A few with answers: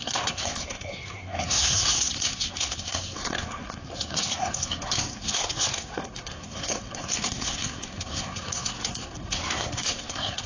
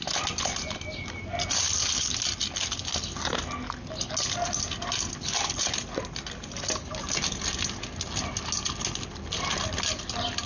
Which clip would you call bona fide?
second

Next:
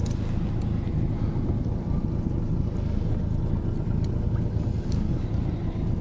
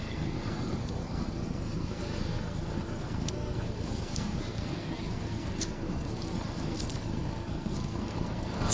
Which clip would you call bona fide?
first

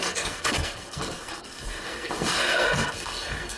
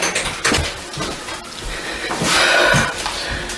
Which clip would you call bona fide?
second